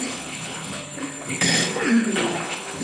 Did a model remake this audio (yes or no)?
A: yes